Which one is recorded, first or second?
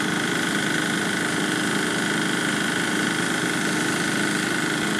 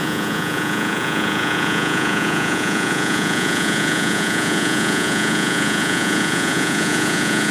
first